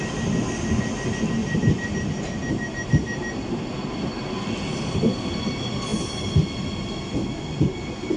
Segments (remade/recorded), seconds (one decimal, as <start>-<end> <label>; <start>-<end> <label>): 0.0-8.2 recorded